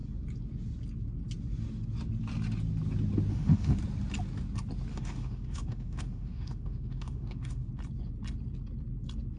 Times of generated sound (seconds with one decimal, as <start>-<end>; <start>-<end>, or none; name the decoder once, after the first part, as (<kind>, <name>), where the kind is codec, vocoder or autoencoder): 3.3-3.8 (autoencoder, DAC-VAE); 4.9-7.7